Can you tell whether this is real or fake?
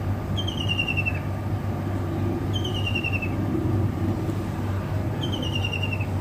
fake